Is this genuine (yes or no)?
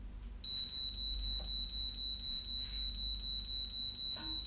yes